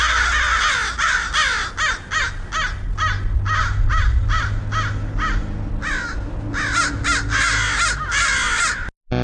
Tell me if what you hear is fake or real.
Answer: real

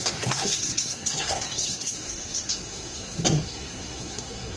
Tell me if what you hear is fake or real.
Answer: fake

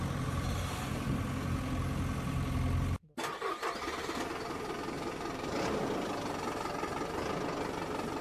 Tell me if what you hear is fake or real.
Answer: real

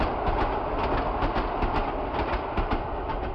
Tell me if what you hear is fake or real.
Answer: real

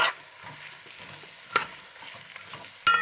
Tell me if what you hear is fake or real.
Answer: real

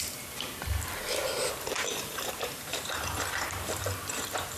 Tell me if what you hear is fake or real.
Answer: fake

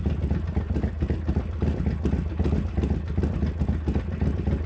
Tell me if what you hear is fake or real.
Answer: real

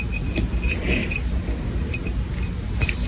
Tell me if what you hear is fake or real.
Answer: real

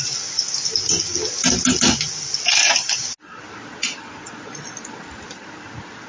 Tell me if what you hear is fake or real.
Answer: real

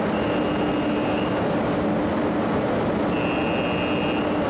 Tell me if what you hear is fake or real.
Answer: real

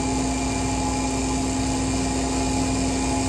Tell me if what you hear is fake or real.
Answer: real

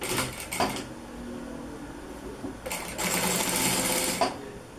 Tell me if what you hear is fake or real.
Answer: real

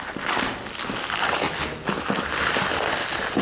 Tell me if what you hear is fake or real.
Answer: real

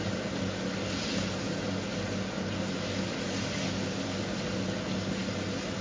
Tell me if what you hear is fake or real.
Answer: real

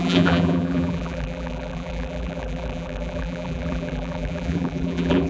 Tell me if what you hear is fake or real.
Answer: fake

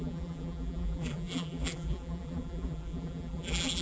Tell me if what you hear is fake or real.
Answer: fake